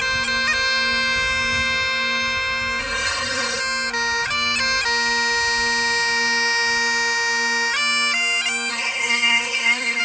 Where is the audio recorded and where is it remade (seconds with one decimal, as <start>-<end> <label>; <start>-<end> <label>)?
0.0-2.8 recorded; 2.8-3.6 remade; 3.6-8.7 recorded; 8.7-10.0 remade